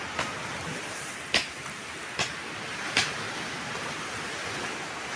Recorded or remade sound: recorded